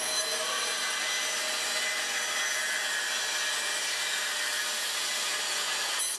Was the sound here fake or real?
real